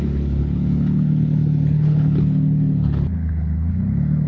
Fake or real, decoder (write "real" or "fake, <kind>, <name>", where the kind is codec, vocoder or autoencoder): fake, codec, HILCodec